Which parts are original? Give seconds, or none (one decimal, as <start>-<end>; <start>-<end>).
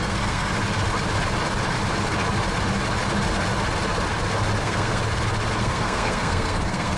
0.5-4.6; 5.0-5.6